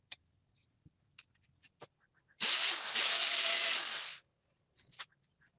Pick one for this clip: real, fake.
fake